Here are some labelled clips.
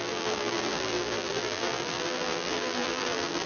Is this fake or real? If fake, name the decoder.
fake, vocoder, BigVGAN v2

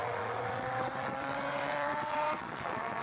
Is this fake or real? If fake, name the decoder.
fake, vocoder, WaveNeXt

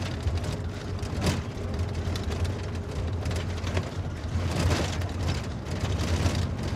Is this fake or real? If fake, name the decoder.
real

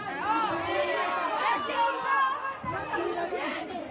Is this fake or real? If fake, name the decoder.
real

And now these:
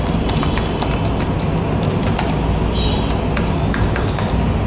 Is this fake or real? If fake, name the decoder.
real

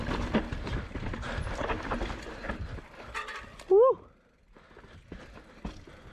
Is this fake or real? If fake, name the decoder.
real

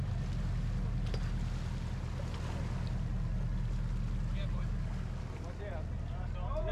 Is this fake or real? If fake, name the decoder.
real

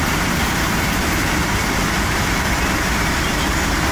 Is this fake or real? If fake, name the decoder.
real